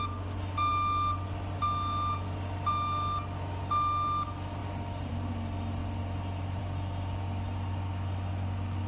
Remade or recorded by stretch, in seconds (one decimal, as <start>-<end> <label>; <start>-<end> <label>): 0.0-8.9 recorded